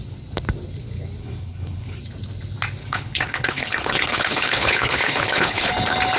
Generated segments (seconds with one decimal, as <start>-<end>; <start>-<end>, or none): 1.2-2.0; 2.8-5.7

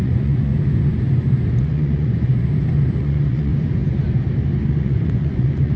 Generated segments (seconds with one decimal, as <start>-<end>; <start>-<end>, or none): 0.0-0.5; 1.6-2.3; 3.0-3.5; 4.7-5.8